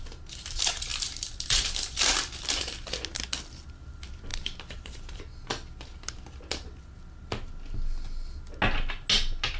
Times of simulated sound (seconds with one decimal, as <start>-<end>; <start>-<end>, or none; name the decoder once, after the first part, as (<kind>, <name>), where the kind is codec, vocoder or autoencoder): 0.9-2.6 (vocoder, BigVGAN v2); 4.3-5.2